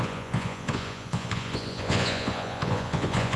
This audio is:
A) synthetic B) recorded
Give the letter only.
A